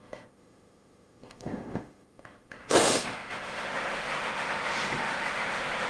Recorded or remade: remade